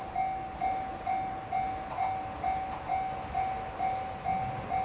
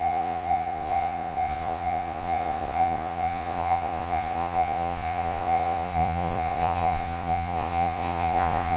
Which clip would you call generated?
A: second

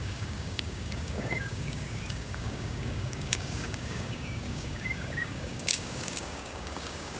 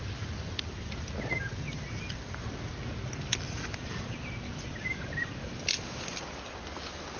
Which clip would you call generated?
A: first